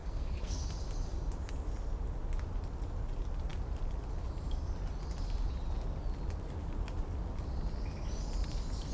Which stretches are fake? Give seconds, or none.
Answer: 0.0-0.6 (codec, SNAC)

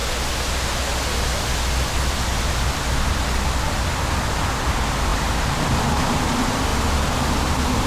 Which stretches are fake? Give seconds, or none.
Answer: 5.1-6.3 (vocoder, BigVGAN v2)